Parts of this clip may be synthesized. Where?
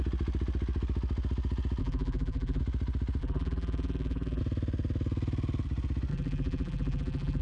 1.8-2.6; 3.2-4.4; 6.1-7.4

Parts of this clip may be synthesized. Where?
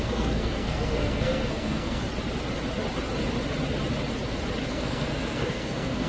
0.0-2.0; 4.7-6.1